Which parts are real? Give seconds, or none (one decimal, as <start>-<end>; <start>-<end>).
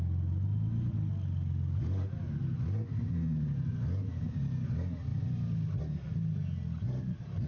0.0-7.5